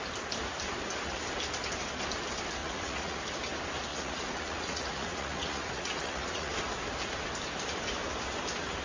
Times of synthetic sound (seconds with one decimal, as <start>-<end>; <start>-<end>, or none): 2.6-3.2; 3.9-6.5